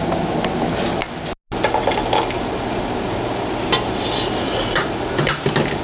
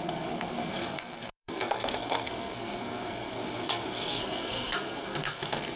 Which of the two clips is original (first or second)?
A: first